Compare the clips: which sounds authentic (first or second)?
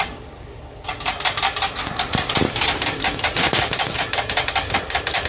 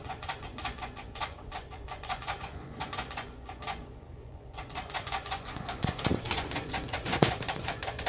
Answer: first